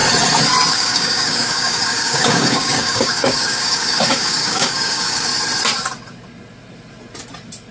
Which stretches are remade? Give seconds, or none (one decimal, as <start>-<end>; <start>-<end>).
0.7-5.3